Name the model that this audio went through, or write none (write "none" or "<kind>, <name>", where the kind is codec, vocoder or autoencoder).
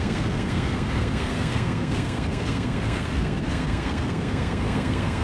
codec, SNAC